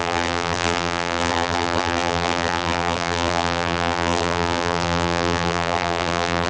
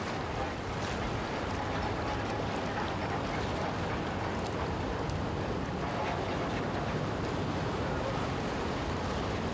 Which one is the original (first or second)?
second